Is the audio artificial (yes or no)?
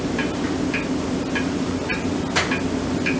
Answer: no